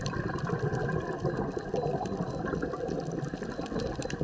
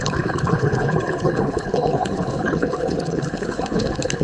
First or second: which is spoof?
second